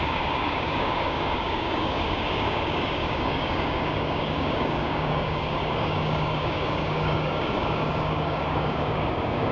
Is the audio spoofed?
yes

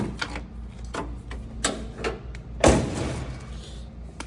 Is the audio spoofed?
no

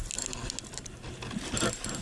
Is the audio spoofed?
no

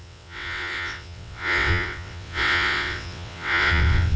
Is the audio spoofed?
yes